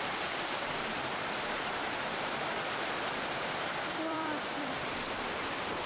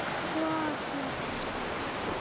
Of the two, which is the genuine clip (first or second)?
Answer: second